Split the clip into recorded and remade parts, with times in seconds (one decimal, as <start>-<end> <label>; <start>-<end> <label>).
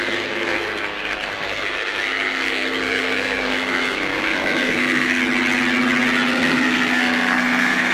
0.0-5.2 remade; 5.2-6.3 recorded; 6.3-7.9 remade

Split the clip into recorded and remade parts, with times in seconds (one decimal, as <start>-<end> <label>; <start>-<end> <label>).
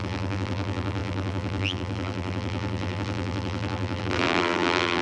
0.0-5.0 remade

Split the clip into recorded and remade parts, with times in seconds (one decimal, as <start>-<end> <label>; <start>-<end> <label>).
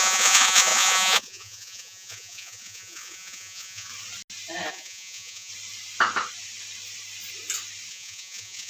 0.0-3.9 remade; 3.9-4.7 recorded; 4.7-5.5 remade; 5.5-7.9 recorded; 7.9-8.7 remade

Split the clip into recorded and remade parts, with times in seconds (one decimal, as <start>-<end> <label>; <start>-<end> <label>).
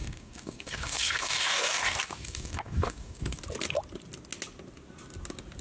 0.0-3.4 remade; 3.4-5.6 recorded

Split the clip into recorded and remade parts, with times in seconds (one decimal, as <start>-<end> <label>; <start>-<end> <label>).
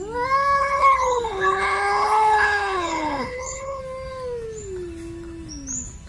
0.0-0.6 recorded; 0.6-3.8 remade; 3.8-6.1 recorded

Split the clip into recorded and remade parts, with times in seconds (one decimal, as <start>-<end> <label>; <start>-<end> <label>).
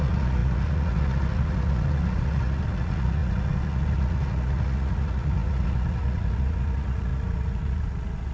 0.0-8.3 remade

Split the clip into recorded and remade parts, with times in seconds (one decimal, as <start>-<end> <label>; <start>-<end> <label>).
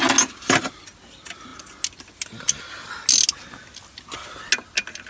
0.0-5.1 recorded